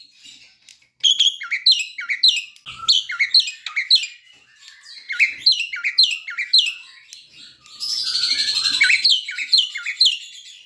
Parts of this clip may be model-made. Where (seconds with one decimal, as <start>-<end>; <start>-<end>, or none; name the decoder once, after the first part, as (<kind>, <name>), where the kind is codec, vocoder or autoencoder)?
7.7-8.3 (vocoder, Vocos); 9.1-9.6